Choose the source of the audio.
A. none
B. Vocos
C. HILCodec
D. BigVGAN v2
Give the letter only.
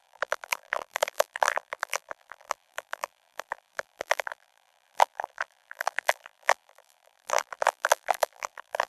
D